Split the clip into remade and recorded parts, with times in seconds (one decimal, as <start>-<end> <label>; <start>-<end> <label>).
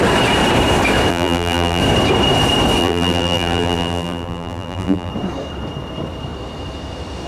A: 0.0-1.1 recorded; 1.1-1.8 remade; 1.8-2.8 recorded; 2.8-5.1 remade; 5.1-7.3 recorded